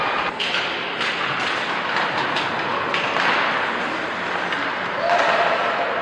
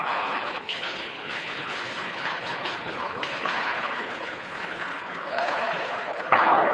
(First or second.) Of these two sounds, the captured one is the first